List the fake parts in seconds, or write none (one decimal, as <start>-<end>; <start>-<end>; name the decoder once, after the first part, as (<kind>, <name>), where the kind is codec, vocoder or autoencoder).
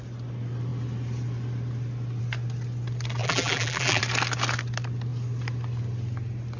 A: 3.2-4.0 (vocoder, BigVGAN v2)